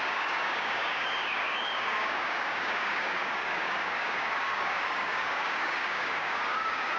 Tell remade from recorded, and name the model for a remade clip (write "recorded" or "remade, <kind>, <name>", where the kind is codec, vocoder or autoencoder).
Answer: remade, codec, DAC